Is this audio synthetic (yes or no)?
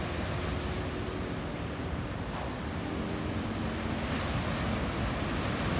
no